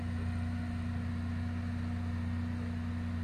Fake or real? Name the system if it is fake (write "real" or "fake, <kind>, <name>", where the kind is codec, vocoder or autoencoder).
real